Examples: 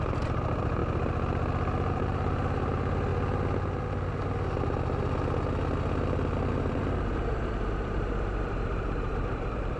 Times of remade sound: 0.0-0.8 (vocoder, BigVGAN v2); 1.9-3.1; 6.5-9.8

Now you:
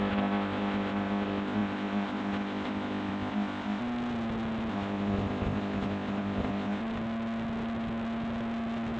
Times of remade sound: 0.0-3.8 (codec, ZipCodec); 4.7-6.8

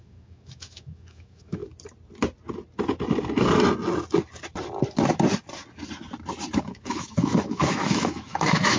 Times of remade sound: 0.0-1.6 (autoencoder, DAC-VAE); 6.6-8.8

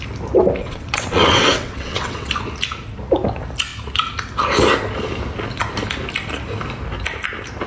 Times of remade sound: 0.6-2.3 (vocoder, WaveNeXt)

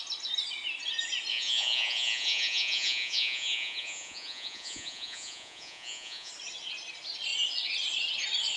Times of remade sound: 1.3-6.3 (vocoder, Vocos)

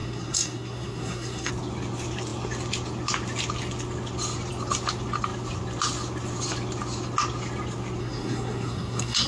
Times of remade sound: 0.0-1.5 (codec, SNAC); 8.0-9.3

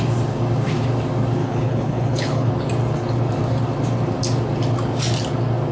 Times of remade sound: 1.4-2.5 (codec, HILCodec)